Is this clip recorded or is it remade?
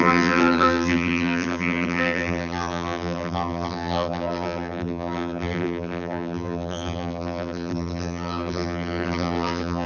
remade